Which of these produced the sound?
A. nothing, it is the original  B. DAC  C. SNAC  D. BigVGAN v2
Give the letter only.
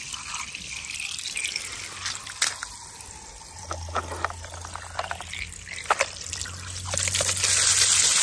A